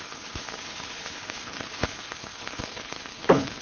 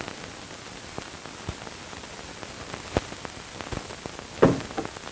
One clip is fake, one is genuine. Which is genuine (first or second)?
second